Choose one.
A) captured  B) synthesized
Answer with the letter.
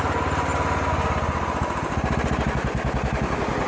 A